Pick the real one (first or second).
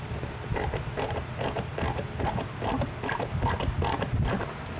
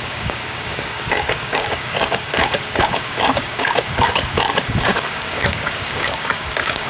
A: first